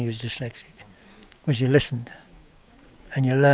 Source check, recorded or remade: remade